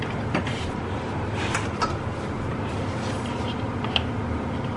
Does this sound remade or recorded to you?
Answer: remade